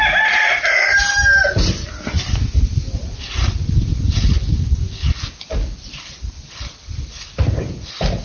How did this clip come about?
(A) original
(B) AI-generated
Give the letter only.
A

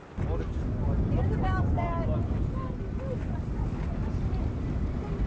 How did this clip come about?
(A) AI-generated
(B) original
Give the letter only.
B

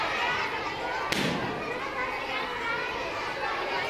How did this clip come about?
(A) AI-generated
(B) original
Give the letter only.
B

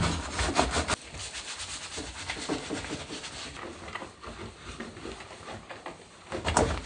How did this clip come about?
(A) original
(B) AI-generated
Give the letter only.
A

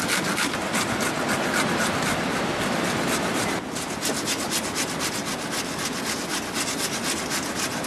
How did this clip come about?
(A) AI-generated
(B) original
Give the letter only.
B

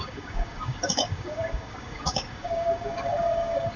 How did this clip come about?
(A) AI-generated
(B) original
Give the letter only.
A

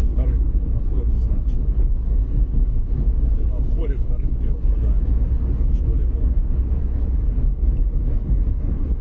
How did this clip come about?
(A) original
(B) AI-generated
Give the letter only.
B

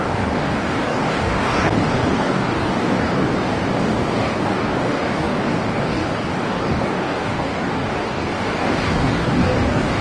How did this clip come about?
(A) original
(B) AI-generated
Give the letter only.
B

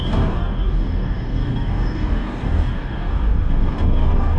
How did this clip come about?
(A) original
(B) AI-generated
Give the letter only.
B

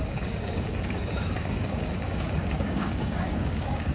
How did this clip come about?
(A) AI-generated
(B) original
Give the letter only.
A